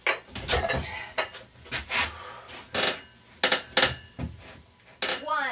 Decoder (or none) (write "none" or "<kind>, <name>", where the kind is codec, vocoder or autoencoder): none